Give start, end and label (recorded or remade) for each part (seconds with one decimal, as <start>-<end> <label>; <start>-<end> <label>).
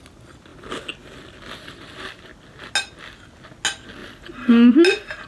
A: 0.0-5.3 recorded